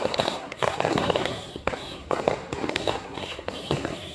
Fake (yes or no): yes